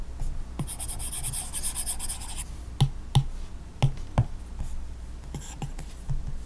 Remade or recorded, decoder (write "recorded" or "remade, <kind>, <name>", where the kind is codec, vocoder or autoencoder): recorded